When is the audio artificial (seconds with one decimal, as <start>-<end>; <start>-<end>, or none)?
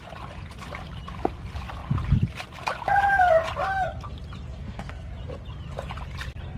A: 4.5-5.1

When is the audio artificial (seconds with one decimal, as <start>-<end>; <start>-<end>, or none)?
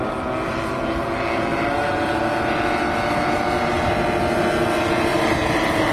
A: 5.1-5.9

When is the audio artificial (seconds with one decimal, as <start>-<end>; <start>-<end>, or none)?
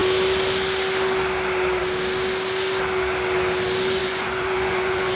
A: 4.0-5.2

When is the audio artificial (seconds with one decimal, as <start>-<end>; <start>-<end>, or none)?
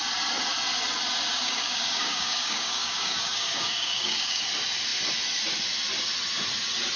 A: 1.3-4.4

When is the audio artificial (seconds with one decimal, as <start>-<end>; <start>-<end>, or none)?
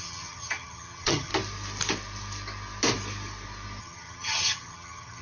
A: 0.0-1.3; 3.8-5.2